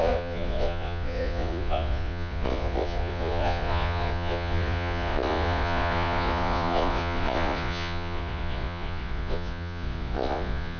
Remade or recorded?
remade